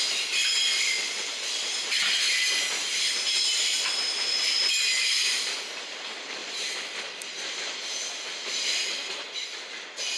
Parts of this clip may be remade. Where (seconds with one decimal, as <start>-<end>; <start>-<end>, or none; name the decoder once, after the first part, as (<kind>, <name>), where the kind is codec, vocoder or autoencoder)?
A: 0.0-2.0 (vocoder, BigVGAN v2); 3.5-10.2